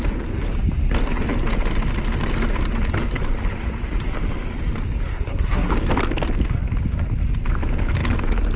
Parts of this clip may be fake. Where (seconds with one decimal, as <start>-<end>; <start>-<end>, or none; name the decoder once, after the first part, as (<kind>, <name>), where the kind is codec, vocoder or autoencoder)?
5.1-5.7 (codec, SNAC)